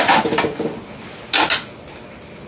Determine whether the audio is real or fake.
real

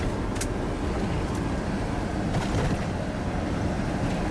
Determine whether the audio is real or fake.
real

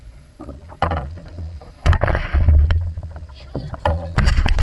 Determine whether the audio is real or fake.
fake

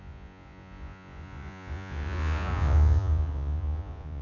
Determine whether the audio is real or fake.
fake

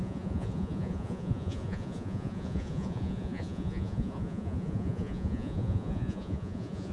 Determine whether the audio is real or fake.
fake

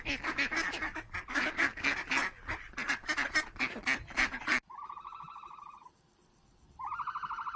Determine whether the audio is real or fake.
real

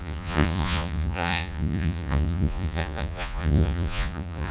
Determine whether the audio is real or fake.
fake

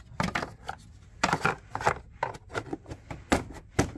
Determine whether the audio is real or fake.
real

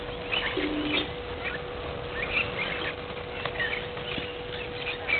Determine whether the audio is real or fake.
real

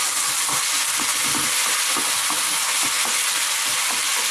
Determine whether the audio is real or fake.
real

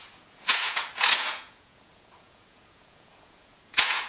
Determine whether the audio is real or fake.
fake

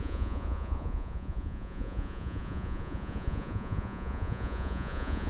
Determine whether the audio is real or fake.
fake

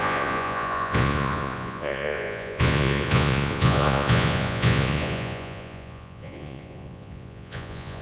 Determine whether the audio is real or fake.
fake